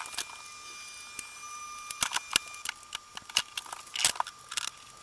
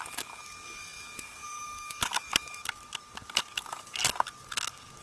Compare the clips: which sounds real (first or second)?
first